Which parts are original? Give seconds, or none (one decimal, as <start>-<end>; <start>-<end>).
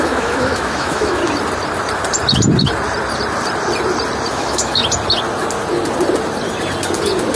1.2-4.3; 4.8-7.4